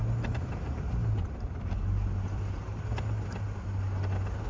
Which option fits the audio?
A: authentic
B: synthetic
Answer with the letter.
A